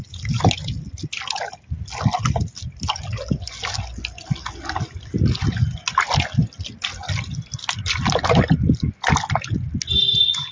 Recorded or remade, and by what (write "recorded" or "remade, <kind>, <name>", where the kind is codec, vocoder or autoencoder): recorded